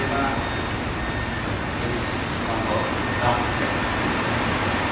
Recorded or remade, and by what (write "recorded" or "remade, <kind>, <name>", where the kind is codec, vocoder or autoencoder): recorded